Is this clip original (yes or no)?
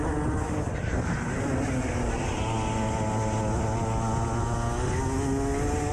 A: yes